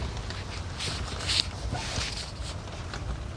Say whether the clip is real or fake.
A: real